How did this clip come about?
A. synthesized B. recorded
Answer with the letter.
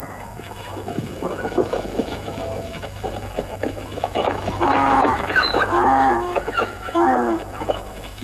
A